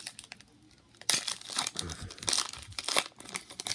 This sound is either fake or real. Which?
real